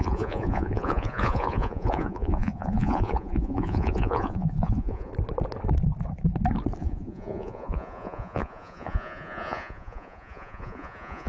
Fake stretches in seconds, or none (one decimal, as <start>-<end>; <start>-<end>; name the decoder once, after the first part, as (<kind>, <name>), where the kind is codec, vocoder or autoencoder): 0.0-5.1 (vocoder, Vocos); 6.8-11.3